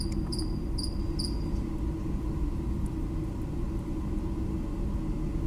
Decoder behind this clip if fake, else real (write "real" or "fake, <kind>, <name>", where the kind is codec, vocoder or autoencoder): real